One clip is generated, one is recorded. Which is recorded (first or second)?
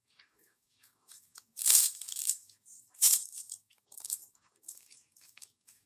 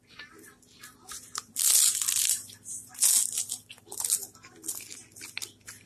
second